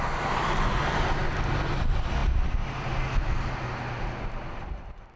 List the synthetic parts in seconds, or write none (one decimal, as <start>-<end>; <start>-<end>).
none